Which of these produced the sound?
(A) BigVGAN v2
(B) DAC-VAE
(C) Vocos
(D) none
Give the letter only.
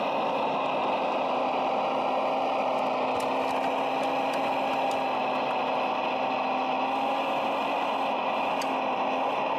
D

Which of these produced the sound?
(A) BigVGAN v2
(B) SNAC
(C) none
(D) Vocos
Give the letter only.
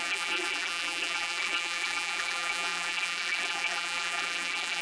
A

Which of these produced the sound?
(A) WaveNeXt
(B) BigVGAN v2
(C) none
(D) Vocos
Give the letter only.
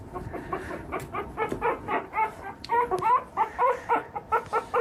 C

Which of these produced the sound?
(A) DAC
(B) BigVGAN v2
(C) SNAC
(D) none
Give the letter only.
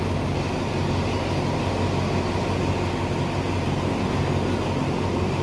D